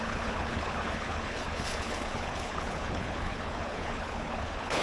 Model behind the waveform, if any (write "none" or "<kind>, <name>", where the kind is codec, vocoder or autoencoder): codec, HILCodec